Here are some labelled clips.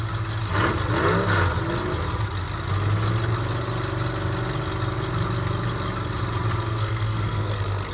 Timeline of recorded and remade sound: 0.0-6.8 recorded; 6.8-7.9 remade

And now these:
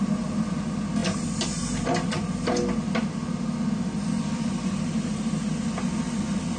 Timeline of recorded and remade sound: 0.0-6.6 recorded

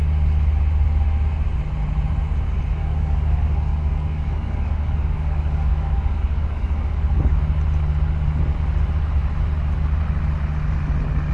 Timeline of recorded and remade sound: 0.0-2.8 recorded; 2.8-7.4 remade; 7.4-11.3 recorded

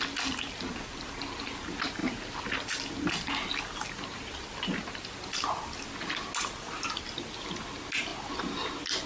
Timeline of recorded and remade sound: 0.0-9.1 recorded